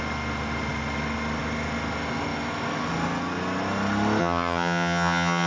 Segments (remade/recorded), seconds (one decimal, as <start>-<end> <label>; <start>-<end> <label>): 0.0-4.2 recorded; 4.2-5.5 remade